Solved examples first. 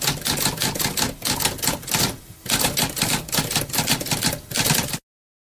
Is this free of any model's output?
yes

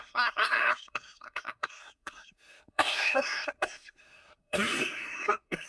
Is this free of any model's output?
no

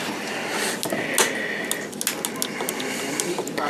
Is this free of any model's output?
yes